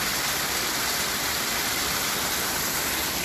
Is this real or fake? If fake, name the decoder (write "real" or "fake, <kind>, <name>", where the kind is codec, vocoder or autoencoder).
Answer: real